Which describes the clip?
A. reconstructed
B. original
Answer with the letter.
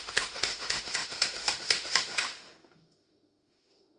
A